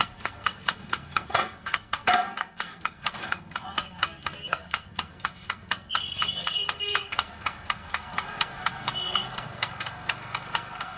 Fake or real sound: fake